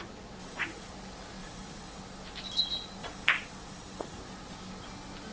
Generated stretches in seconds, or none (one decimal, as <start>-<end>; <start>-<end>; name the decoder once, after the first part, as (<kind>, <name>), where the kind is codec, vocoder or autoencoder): 0.4-0.9 (vocoder, Vocos); 1.4-2.0; 3.0-4.2